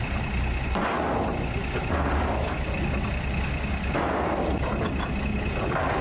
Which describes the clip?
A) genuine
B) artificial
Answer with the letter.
A